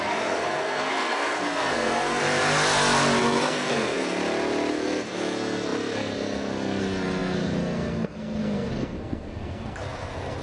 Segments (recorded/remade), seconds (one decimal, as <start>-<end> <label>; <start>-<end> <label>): 0.0-2.2 remade; 2.2-3.2 recorded; 3.2-4.2 remade; 4.2-4.7 recorded; 4.7-10.4 remade